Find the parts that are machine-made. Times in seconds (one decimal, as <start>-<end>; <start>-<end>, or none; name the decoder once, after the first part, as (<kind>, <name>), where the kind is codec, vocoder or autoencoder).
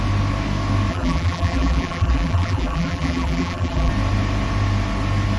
0.9-3.9 (vocoder, BigVGAN v2)